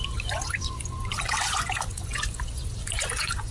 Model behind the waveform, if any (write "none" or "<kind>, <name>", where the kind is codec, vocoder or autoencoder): vocoder, Vocos